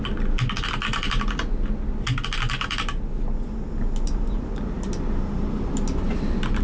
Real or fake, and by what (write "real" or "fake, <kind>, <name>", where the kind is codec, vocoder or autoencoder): real